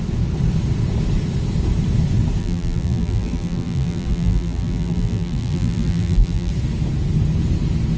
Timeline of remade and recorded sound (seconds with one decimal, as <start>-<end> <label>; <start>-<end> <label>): 0.0-2.4 recorded; 2.4-6.5 remade; 6.5-8.0 recorded